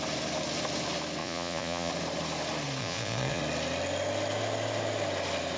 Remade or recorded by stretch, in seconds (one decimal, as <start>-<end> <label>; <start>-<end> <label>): 0.0-1.2 recorded; 1.2-1.9 remade; 1.9-2.8 recorded; 2.8-3.4 remade; 3.4-5.6 recorded